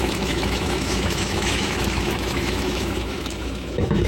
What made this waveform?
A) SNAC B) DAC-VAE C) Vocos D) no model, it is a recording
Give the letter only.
B